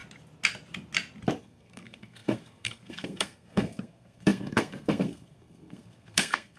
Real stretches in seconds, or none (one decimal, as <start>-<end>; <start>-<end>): 0.0-1.4